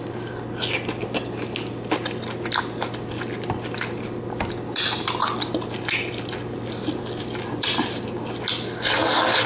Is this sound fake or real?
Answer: real